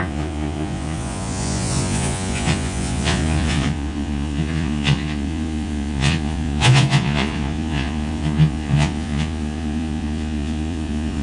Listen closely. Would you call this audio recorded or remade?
remade